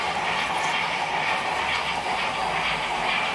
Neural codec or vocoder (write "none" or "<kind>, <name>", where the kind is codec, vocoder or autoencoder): none